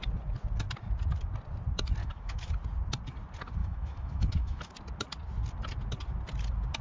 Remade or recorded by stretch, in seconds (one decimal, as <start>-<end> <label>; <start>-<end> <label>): 0.0-2.0 recorded; 2.0-2.5 remade; 2.5-3.6 recorded; 3.6-4.7 remade; 4.7-6.8 recorded